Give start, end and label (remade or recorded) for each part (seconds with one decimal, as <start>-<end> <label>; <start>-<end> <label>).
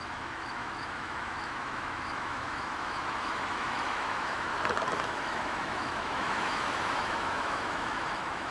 0.0-4.5 remade; 4.5-5.2 recorded; 5.2-8.5 remade